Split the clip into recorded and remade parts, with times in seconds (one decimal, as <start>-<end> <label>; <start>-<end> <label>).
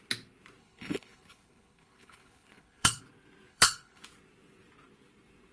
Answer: 0.0-0.6 recorded; 0.6-3.0 remade; 3.0-3.5 recorded; 3.5-4.0 remade; 4.0-5.5 recorded